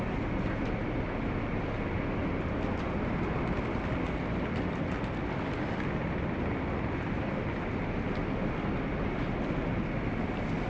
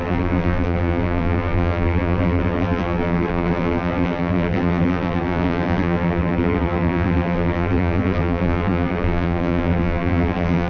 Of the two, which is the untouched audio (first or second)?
first